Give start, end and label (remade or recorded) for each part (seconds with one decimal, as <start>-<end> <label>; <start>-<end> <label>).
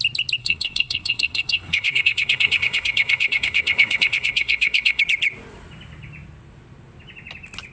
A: 0.0-0.4 recorded; 0.4-5.0 remade; 5.0-7.7 recorded